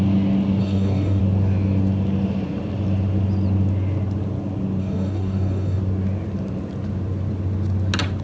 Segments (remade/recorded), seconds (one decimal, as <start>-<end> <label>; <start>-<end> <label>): 0.0-0.6 recorded; 0.6-1.2 remade; 1.2-4.8 recorded; 4.8-5.8 remade; 5.8-8.2 recorded